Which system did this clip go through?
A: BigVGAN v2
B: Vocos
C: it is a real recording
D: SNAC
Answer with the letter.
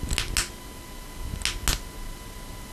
C